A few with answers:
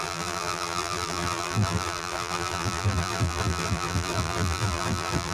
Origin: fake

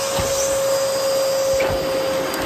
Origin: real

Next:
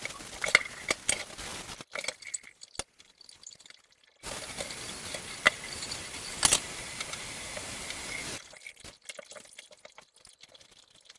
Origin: real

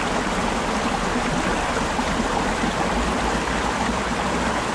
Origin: fake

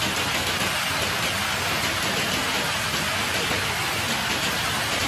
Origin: real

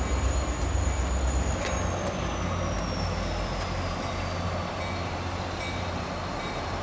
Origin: real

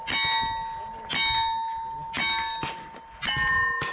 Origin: real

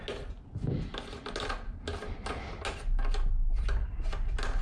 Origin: real